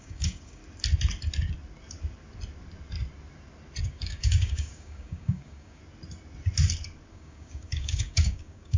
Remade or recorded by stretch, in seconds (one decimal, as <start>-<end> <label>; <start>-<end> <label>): 0.0-0.6 remade; 0.6-3.8 recorded; 3.8-5.8 remade; 5.8-7.1 recorded; 7.1-8.8 remade